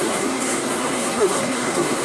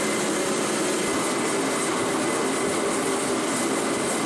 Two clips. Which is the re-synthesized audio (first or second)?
first